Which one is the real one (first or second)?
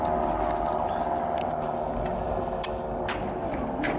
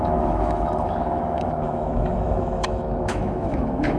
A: first